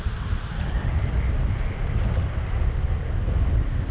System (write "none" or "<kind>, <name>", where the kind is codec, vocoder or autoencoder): none